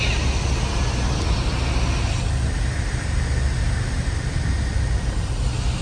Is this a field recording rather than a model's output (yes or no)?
yes